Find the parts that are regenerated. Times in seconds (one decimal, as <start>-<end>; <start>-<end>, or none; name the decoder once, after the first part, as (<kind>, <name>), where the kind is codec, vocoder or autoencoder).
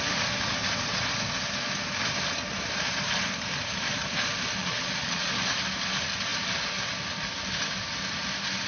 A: 4.6-5.3 (vocoder, Vocos)